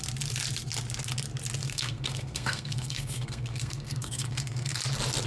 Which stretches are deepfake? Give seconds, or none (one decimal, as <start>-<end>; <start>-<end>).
1.6-4.8